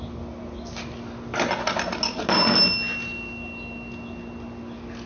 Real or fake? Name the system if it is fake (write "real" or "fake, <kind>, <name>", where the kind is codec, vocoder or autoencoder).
real